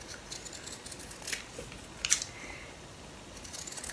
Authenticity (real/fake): fake